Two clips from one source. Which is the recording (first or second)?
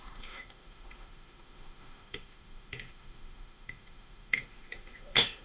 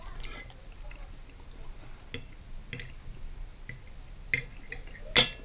second